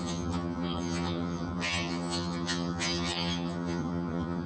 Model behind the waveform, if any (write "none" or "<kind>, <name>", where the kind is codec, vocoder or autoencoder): vocoder, HiFi-GAN